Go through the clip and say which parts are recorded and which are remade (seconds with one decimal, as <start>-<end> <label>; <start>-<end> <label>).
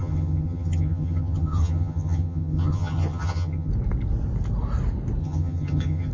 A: 0.0-3.7 remade; 3.7-5.2 recorded; 5.2-6.1 remade